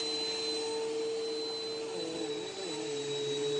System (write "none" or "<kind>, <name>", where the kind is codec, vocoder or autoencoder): none